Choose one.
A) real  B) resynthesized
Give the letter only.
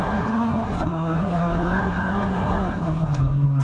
B